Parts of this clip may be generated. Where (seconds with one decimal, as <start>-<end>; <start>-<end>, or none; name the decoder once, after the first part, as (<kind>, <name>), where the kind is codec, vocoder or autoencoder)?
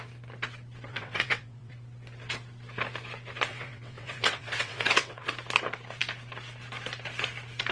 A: 0.9-1.7 (vocoder, WaveNeXt); 3.5-5.3